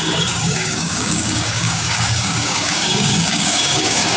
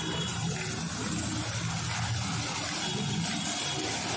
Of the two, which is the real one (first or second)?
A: second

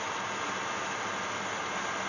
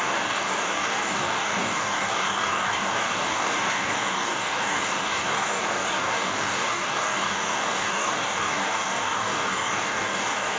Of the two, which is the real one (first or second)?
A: first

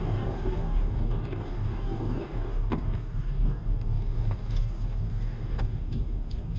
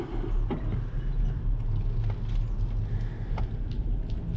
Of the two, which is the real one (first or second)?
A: second